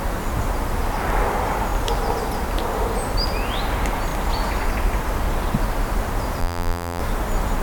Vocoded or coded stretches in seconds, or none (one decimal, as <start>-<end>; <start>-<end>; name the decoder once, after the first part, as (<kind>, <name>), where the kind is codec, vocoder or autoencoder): 6.4-7.0 (vocoder, BigVGAN v2)